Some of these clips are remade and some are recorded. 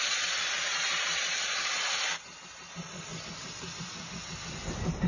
recorded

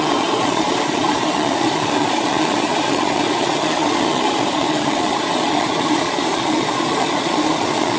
remade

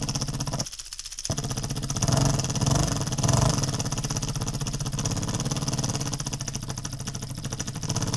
recorded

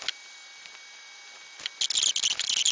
recorded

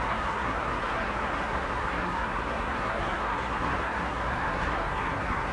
remade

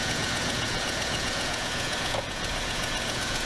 remade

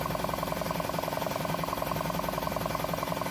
recorded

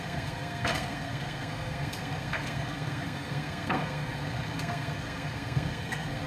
remade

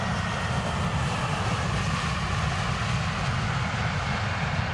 recorded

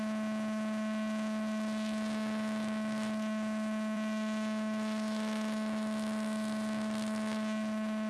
remade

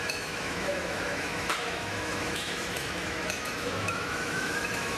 remade